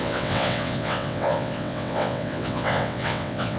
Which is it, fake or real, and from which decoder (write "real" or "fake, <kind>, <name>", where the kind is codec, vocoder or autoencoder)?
fake, vocoder, WaveNeXt